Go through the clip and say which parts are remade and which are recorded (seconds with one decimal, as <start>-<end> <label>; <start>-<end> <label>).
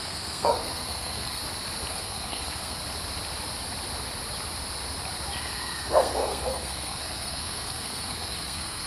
0.0-1.4 remade; 1.4-1.9 recorded; 1.9-2.8 remade; 2.8-5.4 recorded; 5.4-8.9 remade